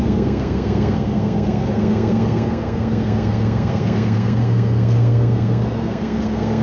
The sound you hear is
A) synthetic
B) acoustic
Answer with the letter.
A